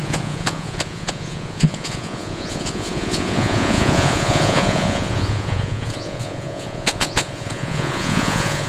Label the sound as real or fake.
fake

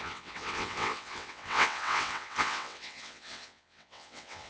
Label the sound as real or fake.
fake